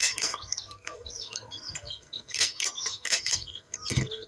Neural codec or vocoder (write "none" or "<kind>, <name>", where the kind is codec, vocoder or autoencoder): codec, SNAC